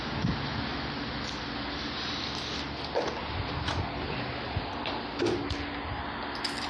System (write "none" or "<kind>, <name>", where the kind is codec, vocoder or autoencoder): none